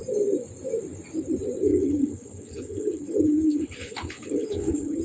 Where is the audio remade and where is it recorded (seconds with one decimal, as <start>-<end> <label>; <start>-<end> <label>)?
0.0-1.7 recorded; 1.7-5.0 remade